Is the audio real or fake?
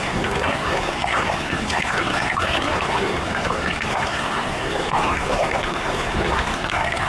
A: fake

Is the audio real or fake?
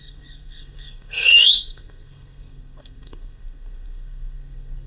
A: fake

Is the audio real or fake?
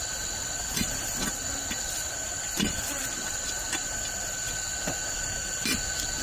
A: real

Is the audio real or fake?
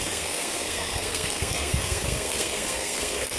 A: fake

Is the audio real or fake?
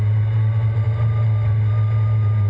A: real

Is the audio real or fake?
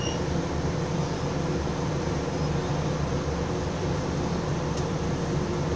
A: real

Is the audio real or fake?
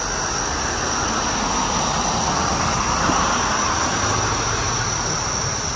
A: real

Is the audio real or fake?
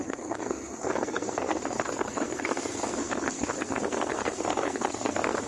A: fake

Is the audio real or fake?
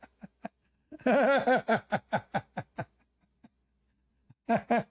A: real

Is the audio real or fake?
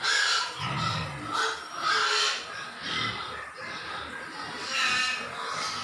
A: real